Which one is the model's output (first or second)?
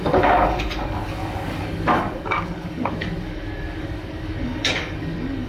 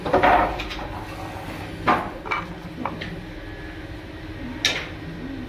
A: first